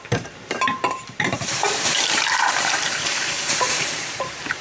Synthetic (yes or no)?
yes